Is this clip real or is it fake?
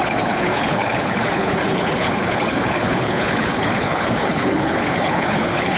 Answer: fake